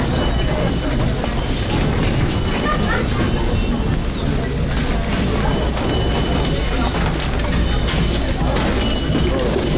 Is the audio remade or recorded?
recorded